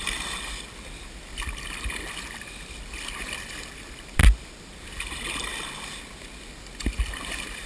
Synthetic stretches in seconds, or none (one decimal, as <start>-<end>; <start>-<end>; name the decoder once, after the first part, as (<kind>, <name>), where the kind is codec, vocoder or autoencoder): none